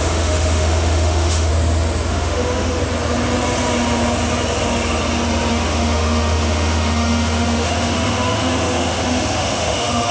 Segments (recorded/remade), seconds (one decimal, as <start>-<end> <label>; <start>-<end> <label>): 0.0-1.5 remade; 1.5-2.1 recorded; 2.1-2.8 remade; 2.8-5.5 recorded; 5.5-10.1 remade